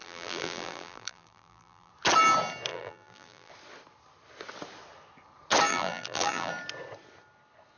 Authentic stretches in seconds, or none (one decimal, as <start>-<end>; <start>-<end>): 1.9-2.7; 3.5-5.7; 6.5-7.8